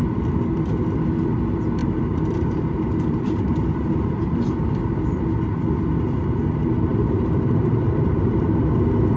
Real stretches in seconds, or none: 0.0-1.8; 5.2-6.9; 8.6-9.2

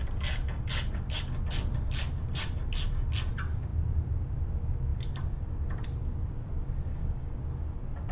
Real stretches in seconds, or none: 0.0-6.9; 7.4-8.1

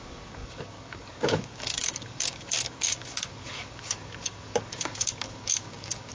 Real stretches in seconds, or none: none